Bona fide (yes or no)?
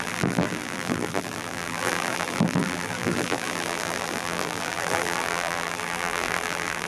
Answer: no